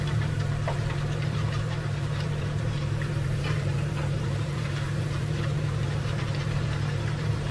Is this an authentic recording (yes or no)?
no